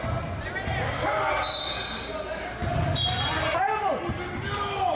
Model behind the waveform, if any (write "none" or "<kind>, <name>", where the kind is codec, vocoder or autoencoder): none